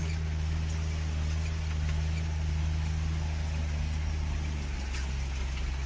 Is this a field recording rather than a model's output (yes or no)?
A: yes